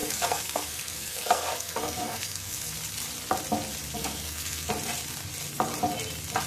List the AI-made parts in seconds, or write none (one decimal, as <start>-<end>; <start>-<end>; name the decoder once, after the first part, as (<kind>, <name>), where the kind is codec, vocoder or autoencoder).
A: 0.0-2.7 (codec, SNAC); 4.0-4.7